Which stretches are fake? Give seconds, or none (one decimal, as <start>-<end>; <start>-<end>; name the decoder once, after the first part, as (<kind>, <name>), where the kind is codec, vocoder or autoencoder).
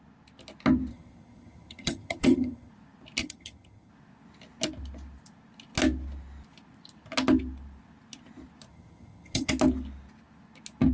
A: 0.9-2.7 (vocoder, HiFi-GAN); 3.2-3.9; 8.7-9.5